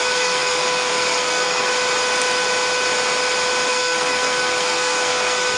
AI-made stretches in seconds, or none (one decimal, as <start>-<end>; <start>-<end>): 0.0-1.7; 3.7-5.6